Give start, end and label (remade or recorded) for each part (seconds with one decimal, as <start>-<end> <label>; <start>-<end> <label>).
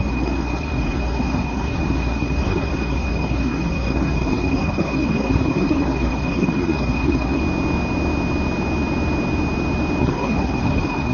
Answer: 0.0-7.4 remade; 7.4-10.0 recorded; 10.0-11.1 remade